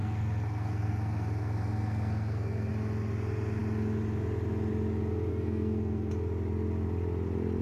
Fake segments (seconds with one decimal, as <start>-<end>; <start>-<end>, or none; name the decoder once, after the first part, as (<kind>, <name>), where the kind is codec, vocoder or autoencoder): 0.0-2.7 (codec, SNAC); 5.3-6.1